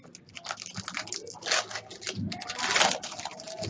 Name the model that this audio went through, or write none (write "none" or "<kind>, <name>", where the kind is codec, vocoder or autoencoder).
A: none